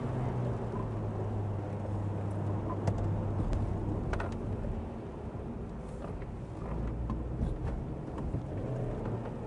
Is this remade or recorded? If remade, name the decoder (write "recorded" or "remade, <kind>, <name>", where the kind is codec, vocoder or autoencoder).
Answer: recorded